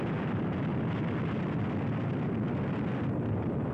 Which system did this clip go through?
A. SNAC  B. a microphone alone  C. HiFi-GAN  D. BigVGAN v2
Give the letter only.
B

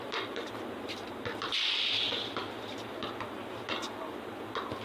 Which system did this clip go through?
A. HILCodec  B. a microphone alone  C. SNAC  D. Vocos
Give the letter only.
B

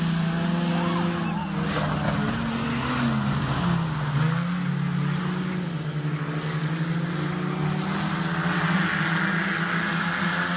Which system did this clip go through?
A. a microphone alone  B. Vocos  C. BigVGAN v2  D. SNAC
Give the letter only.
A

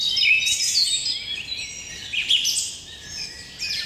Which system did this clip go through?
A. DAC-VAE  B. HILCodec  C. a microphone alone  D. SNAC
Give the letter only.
C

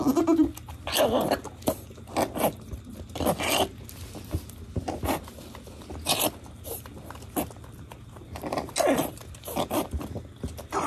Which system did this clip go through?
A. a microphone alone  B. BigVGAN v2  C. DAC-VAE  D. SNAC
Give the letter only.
A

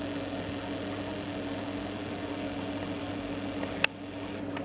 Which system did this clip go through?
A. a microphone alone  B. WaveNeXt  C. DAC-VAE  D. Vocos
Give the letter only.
A